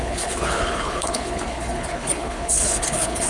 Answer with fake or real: fake